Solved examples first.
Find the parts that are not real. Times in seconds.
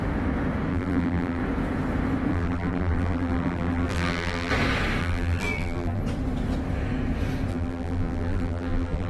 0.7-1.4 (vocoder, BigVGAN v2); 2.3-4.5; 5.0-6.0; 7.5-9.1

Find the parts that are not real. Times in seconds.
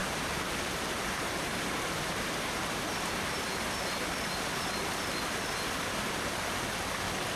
0.0-3.7 (vocoder, BigVGAN v2)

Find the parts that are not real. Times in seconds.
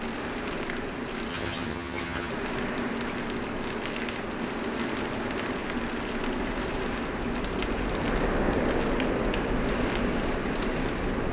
1.3-2.3 (vocoder, HiFi-GAN)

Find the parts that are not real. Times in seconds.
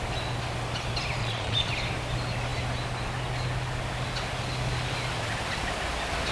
1.2-1.7 (vocoder, Vocos)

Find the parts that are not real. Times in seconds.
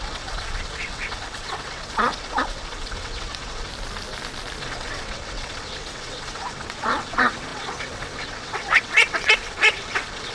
0.0-3.7 (vocoder, WaveNeXt); 4.6-10.3